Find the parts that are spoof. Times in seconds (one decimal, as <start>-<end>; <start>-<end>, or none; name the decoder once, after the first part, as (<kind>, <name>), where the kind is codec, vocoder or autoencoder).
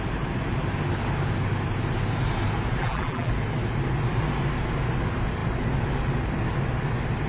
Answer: 2.8-3.3 (vocoder, BigVGAN v2)